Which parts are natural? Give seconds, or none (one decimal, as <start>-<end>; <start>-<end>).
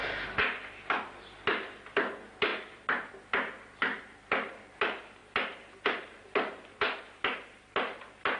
0.0-2.5; 3.1-8.4